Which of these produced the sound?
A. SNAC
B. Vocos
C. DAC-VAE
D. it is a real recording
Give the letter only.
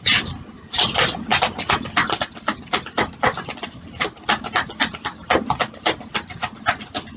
D